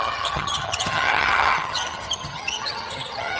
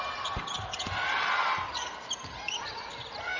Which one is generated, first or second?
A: first